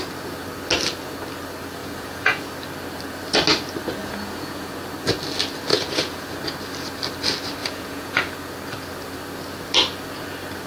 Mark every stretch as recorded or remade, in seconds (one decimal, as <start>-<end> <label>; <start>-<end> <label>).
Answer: 0.0-1.8 recorded; 1.8-2.5 remade; 2.5-4.0 recorded; 4.0-4.7 remade; 4.7-5.7 recorded; 5.7-6.4 remade; 6.4-7.6 recorded; 7.6-8.3 remade; 8.3-10.7 recorded